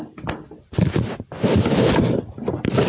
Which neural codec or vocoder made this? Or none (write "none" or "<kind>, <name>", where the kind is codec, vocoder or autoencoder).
none